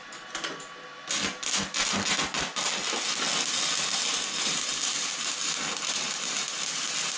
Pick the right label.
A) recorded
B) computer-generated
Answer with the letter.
A